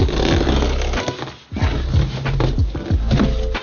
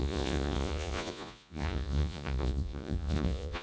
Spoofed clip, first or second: second